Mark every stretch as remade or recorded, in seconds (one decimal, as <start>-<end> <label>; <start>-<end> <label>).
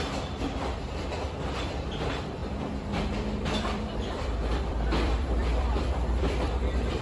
0.0-7.0 remade